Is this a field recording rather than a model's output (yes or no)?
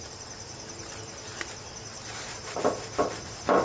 no